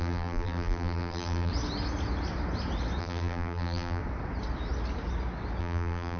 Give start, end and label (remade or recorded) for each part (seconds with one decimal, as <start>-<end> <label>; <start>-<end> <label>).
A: 0.0-1.5 remade; 1.5-3.0 recorded; 3.0-4.0 remade; 4.0-5.6 recorded; 5.6-6.2 remade